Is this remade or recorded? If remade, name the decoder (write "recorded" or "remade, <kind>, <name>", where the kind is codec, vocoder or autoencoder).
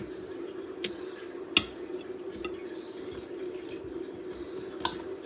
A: recorded